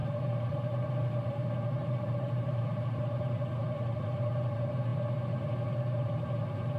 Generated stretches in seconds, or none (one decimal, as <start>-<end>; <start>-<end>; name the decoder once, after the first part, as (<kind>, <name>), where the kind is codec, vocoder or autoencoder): 0.0-4.9 (vocoder, BigVGAN v2); 5.8-6.8